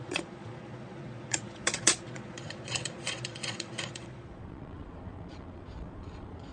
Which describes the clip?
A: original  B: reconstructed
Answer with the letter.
B